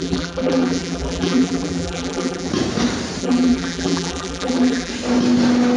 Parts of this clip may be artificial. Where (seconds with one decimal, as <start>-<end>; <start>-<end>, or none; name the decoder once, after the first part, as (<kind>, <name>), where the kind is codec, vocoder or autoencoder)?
0.0-2.5 (vocoder, BigVGAN v2); 3.2-4.9